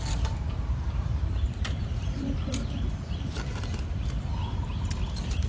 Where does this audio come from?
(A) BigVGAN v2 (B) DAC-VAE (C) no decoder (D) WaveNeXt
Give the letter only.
A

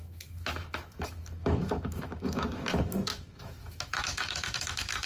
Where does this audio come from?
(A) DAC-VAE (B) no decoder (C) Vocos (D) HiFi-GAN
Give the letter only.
A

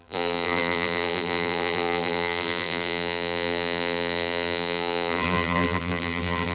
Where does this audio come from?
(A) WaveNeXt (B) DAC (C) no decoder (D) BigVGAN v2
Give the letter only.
D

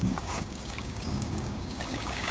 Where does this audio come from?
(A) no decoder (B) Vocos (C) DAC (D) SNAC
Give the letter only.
C